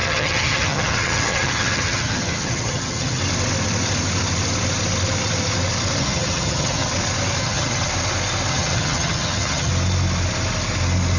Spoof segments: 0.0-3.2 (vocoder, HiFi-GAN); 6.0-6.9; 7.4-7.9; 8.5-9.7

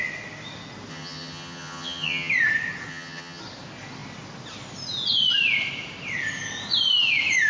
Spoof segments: 0.9-2.3 (vocoder, HiFi-GAN); 2.9-3.4